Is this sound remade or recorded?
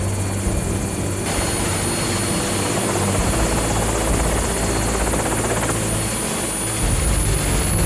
recorded